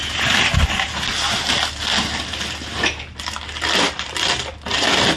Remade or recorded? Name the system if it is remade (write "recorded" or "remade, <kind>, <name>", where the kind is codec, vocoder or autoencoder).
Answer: recorded